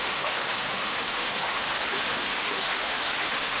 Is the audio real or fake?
fake